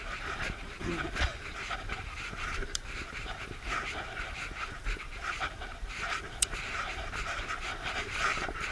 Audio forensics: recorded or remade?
remade